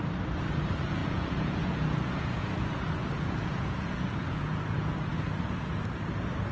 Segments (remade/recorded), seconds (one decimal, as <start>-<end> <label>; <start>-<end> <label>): 0.0-1.0 recorded; 1.0-4.9 remade; 4.9-6.5 recorded